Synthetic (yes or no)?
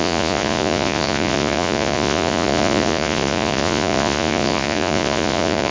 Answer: yes